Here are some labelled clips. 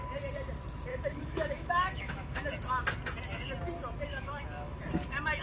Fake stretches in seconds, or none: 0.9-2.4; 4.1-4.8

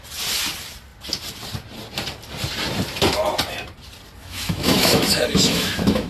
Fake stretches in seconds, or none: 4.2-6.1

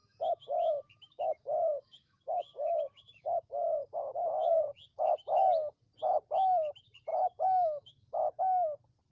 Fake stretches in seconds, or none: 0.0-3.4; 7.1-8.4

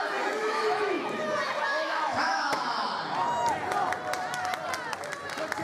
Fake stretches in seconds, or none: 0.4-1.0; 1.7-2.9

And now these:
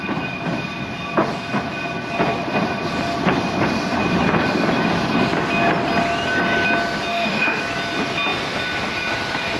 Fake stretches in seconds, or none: 7.1-7.6